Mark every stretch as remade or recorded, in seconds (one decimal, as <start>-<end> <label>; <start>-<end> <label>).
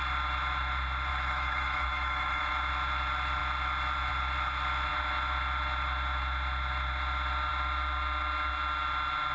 0.0-1.1 recorded; 1.1-2.5 remade; 2.5-9.3 recorded